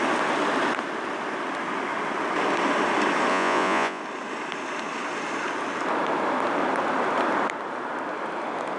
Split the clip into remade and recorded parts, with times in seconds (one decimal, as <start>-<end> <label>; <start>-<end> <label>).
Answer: 0.0-3.3 recorded; 3.3-4.0 remade; 4.0-8.8 recorded